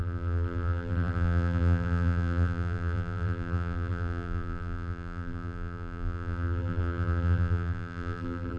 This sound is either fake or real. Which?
fake